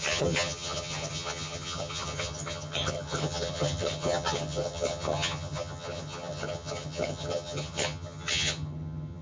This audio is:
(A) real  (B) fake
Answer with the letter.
B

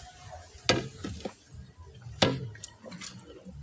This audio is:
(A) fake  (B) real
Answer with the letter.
B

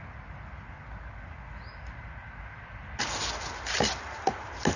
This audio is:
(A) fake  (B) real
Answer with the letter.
B